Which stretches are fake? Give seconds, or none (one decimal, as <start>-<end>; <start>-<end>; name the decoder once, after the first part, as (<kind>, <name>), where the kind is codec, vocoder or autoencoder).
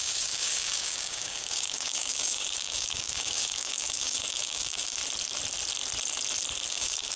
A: 0.0-5.0 (codec, DAC); 6.7-7.2